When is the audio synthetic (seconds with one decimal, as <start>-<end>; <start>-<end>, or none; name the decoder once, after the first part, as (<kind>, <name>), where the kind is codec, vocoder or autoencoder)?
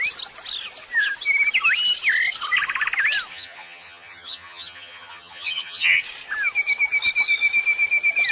3.3-6.0 (vocoder, HiFi-GAN)